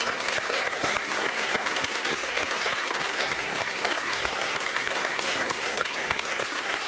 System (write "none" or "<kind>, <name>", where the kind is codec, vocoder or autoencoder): codec, SNAC